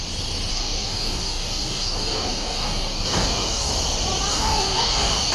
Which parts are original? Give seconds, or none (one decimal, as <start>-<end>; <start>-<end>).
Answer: 0.0-0.5; 3.7-4.3